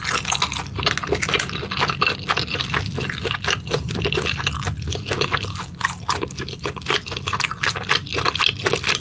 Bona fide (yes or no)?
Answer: yes